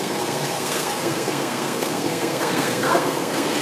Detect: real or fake fake